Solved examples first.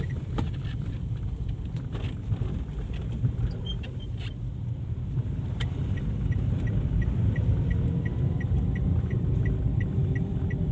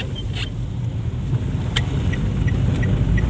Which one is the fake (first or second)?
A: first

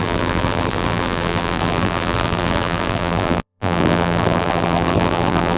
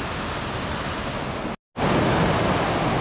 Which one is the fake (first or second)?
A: first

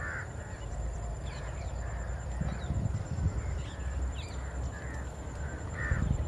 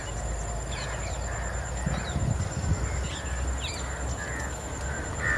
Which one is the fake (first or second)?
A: first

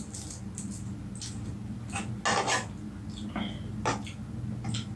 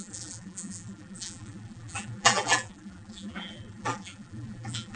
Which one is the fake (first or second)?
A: second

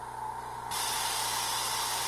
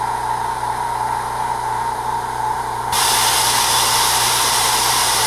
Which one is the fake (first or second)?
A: second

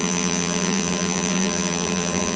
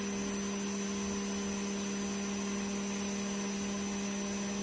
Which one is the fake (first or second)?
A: first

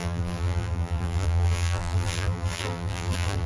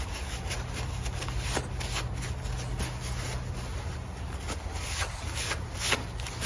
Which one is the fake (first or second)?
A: first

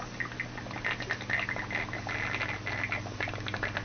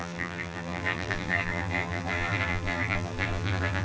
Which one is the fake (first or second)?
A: second